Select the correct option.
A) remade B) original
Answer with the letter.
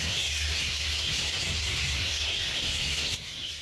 A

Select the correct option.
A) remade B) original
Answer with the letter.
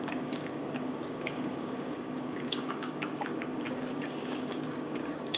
A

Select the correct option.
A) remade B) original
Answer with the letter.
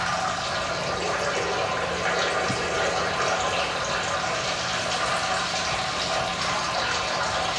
B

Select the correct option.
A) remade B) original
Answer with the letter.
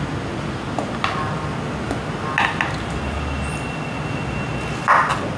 B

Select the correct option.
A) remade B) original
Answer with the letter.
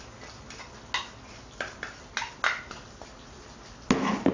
B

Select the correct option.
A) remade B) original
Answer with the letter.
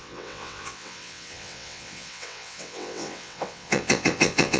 A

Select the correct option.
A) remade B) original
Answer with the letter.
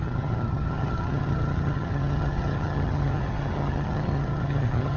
A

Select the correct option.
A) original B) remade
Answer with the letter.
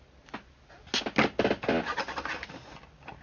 A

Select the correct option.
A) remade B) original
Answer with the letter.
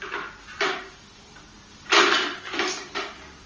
B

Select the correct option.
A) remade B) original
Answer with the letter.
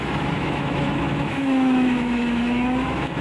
A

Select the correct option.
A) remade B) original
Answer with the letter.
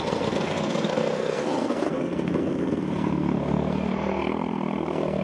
A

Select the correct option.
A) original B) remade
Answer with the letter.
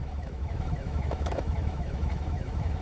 B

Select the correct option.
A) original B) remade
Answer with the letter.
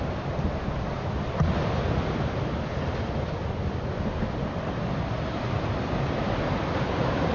A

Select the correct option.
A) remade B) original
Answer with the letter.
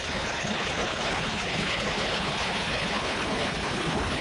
A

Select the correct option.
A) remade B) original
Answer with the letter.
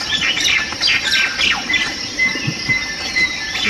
B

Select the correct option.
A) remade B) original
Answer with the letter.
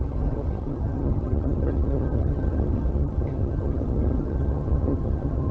A